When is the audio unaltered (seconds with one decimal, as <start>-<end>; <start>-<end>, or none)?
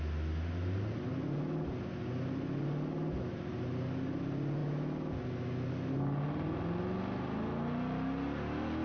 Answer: 0.0-8.8